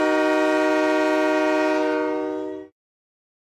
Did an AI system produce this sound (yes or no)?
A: no